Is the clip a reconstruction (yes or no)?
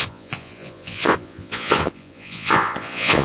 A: yes